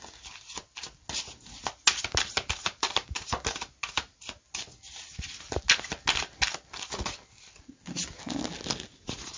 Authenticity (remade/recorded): recorded